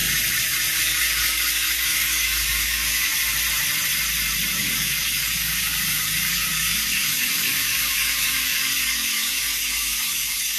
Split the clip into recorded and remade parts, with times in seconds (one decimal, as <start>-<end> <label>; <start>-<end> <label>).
0.0-0.8 recorded; 0.8-3.1 remade; 3.1-4.6 recorded; 4.6-10.6 remade